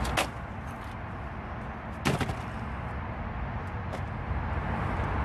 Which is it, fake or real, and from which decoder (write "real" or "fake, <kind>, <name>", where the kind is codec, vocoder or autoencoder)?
real